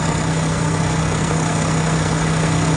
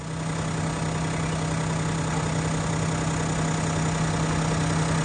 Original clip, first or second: second